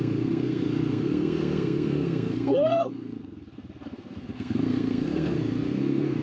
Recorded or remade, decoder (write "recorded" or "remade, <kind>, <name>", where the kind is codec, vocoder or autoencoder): remade, codec, SNAC